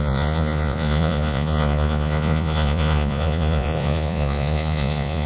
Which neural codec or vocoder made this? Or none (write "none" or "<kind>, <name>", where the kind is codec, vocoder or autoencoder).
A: vocoder, Vocos